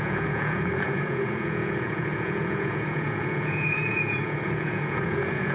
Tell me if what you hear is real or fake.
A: fake